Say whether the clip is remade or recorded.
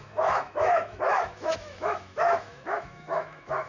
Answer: remade